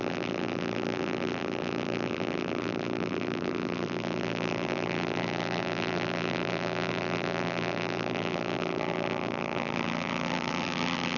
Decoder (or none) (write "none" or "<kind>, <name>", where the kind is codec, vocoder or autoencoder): vocoder, BigVGAN v2